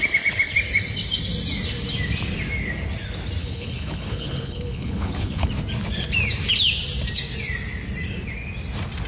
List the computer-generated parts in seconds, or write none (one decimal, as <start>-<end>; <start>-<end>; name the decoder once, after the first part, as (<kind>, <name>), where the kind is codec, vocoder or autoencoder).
3.4-5.5 (codec, HILCodec)